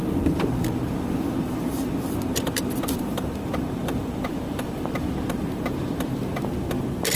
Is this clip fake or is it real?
fake